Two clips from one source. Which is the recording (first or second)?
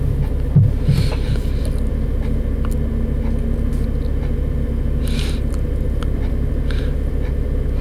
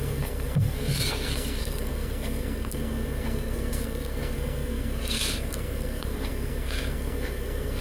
first